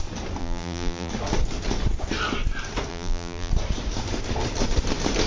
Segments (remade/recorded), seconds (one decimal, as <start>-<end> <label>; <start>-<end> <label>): 0.0-0.4 recorded; 0.4-1.1 remade; 1.1-2.9 recorded; 2.9-3.5 remade; 3.5-5.3 recorded